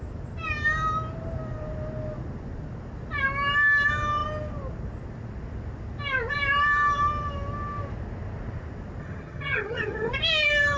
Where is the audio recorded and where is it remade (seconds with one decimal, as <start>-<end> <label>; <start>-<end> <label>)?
0.0-9.0 recorded; 9.0-10.1 remade; 10.1-10.8 recorded